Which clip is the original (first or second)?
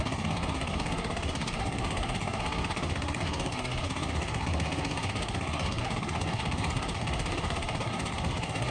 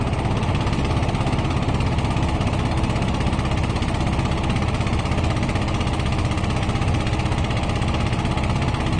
second